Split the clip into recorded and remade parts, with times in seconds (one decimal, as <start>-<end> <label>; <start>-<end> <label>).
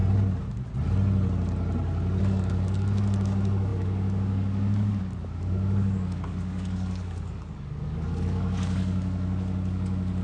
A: 0.0-2.2 recorded; 2.2-10.2 remade